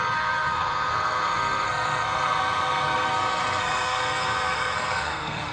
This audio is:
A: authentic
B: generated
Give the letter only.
B